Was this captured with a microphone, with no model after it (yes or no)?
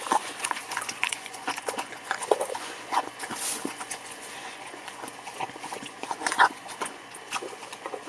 no